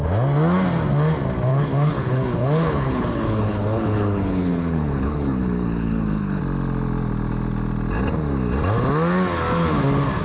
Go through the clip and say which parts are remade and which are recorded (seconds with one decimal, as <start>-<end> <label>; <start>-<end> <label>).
0.0-1.5 recorded; 1.5-6.4 remade; 6.4-10.2 recorded